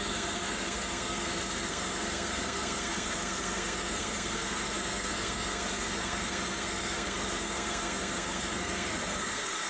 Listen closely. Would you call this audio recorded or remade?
remade